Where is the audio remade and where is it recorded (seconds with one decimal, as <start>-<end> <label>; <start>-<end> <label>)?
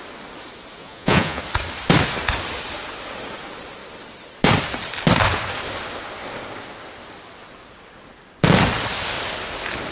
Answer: 0.0-0.8 recorded; 0.8-1.4 remade; 1.4-9.9 recorded